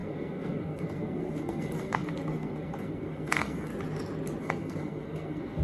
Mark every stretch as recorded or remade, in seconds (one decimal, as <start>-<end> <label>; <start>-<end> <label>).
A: 0.0-3.7 remade; 3.7-4.4 recorded; 4.4-5.6 remade